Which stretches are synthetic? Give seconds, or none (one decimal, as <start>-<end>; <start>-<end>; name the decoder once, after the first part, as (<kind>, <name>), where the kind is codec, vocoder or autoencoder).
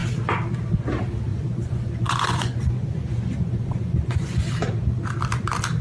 1.3-4.4 (vocoder, Vocos)